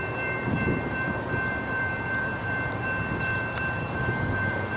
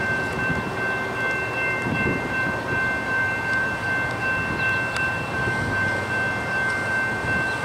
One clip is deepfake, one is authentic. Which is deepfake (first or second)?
first